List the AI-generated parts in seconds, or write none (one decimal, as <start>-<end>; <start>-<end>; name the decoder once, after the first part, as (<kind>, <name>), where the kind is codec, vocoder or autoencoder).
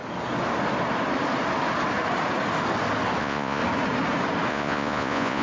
3.2-3.6 (vocoder, Vocos); 4.5-5.4